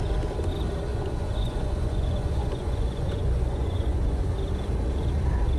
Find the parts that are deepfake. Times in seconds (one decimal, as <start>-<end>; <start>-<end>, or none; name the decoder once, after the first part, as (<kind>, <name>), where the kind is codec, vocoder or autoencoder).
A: 0.9-4.3 (vocoder, Vocos)